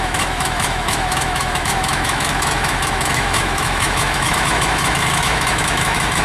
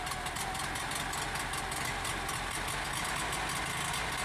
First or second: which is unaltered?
second